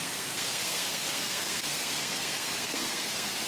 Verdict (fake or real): fake